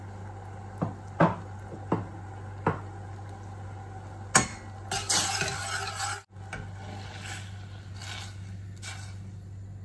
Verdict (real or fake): real